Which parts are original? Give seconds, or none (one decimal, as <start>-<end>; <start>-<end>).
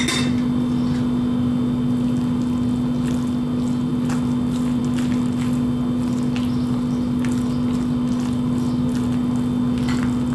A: 0.0-10.3